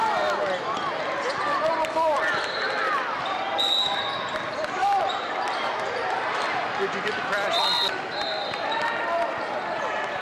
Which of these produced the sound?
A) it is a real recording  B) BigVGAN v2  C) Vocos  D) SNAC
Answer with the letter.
B